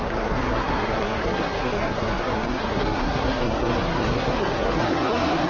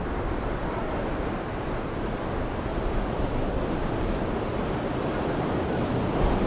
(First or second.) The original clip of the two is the second